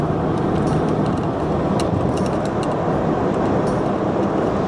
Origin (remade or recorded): recorded